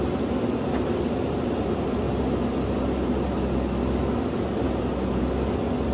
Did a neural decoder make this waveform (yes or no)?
no